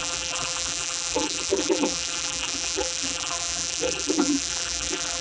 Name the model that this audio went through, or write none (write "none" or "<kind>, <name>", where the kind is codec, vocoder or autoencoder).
vocoder, BigVGAN v2